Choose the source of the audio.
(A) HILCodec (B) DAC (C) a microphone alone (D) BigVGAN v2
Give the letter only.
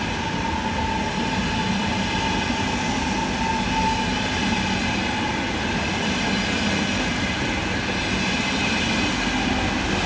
C